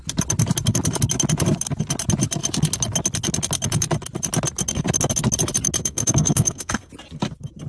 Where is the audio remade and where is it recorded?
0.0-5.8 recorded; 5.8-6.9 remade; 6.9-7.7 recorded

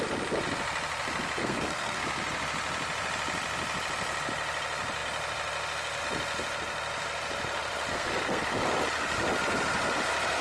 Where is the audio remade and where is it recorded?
0.0-1.4 recorded; 1.4-2.0 remade; 2.0-7.9 recorded; 7.9-8.4 remade; 8.4-10.4 recorded

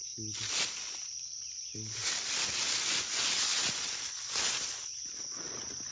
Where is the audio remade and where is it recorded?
0.0-5.9 recorded